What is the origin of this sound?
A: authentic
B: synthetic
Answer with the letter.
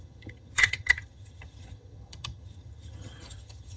B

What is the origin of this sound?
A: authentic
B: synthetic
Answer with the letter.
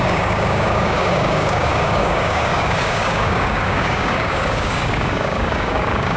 B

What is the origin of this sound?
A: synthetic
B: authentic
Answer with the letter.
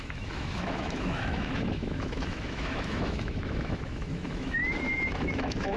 A